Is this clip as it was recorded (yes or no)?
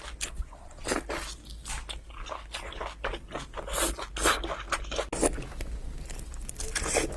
yes